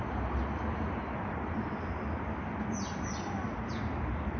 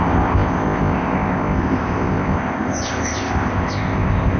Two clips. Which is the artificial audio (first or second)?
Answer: second